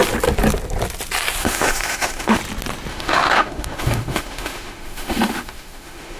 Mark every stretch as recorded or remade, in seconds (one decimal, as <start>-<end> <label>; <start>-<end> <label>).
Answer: 0.0-1.4 recorded; 1.4-2.4 remade; 2.4-2.9 recorded; 2.9-6.2 remade